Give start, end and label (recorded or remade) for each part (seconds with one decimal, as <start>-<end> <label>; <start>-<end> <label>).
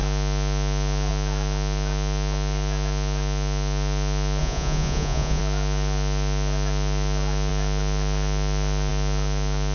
0.0-4.4 recorded; 4.4-5.4 remade; 5.4-9.7 recorded